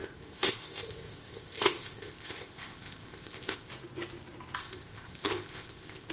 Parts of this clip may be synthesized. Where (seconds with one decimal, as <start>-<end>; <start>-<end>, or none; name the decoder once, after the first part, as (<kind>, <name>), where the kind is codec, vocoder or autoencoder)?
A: 0.0-3.7 (codec, ZipCodec); 4.6-6.1